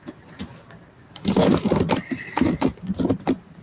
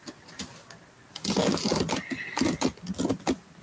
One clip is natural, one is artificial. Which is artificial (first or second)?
first